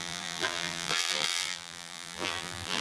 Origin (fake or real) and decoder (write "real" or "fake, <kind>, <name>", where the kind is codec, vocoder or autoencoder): fake, vocoder, BigVGAN v2